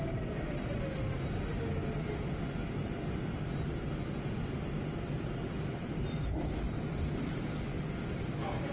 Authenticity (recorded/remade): recorded